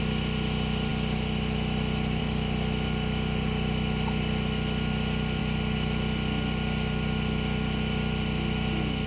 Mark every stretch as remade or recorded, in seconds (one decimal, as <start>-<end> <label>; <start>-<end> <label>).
0.0-9.1 recorded